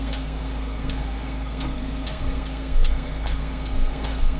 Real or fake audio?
fake